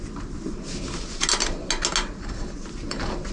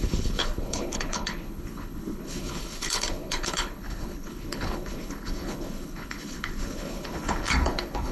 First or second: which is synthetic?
second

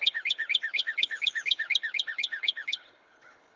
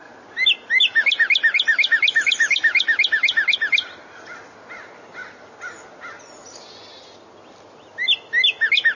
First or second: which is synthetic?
first